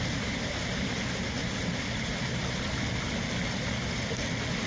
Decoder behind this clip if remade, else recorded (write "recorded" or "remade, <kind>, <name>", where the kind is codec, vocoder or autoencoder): recorded